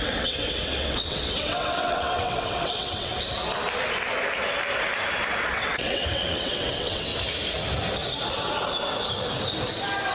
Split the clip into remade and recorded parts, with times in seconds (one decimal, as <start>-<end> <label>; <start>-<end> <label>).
0.0-3.1 remade; 3.1-5.5 recorded; 5.5-7.1 remade; 7.1-10.1 recorded